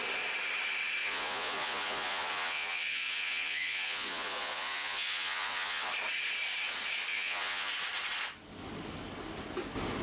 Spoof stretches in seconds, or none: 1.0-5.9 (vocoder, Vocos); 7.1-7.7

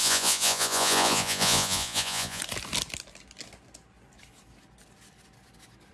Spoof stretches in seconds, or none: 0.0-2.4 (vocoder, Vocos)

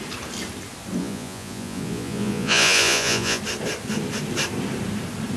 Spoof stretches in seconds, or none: 1.0-3.4 (vocoder, Vocos)